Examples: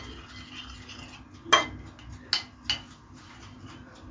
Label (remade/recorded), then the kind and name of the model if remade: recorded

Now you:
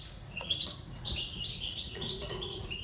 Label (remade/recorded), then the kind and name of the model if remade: remade, vocoder, Vocos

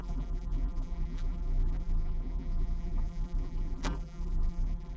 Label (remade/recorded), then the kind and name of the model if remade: remade, vocoder, BigVGAN v2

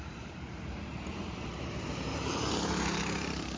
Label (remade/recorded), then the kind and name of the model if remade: remade, vocoder, BigVGAN v2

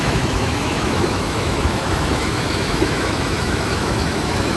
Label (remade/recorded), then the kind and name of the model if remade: remade, autoencoder, DAC-VAE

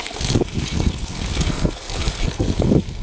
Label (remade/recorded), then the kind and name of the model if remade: remade, codec, SNAC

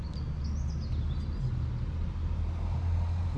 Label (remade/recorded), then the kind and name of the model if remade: recorded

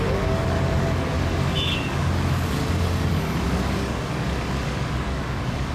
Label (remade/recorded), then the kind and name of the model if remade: remade, codec, DAC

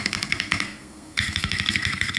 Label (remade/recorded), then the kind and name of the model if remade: remade, codec, SNAC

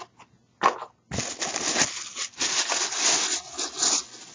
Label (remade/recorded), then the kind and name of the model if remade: recorded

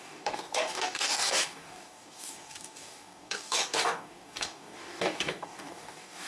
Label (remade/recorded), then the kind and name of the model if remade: remade, codec, DAC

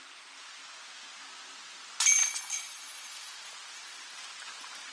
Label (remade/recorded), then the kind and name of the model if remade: recorded